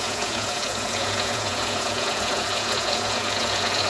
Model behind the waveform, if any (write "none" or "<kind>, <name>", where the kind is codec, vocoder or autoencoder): vocoder, Vocos